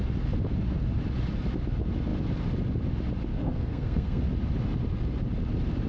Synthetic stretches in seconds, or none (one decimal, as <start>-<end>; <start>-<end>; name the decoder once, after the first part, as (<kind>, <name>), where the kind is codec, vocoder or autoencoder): 3.3-4.2 (codec, SNAC)